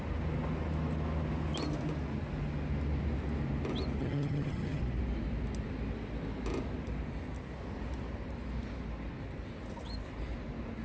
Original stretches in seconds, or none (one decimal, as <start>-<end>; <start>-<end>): 0.0-4.0; 4.8-10.8